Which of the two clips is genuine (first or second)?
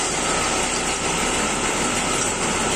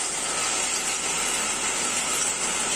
second